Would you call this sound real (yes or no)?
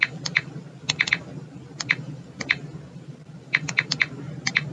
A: yes